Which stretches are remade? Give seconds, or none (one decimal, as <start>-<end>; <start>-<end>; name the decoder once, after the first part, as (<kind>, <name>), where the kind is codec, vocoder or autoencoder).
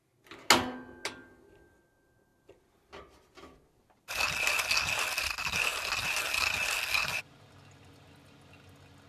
none